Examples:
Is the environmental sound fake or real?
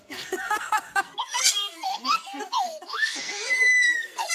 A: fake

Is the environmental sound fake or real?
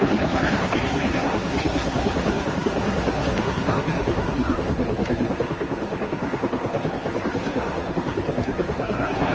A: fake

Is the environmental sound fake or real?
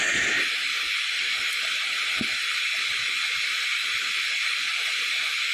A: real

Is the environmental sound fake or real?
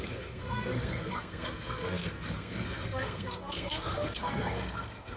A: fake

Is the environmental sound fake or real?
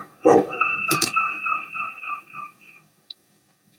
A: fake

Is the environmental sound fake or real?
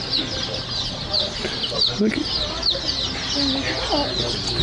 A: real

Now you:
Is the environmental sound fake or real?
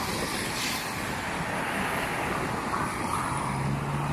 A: real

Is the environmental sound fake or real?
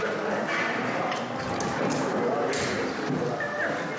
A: real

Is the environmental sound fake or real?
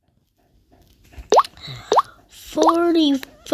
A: real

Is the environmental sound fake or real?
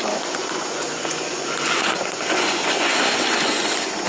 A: fake